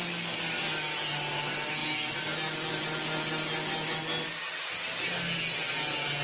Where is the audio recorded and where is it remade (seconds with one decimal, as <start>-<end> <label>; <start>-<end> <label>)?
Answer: 0.0-6.2 recorded